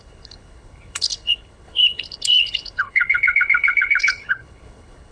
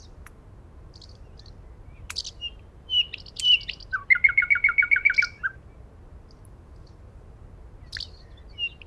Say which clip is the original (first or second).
second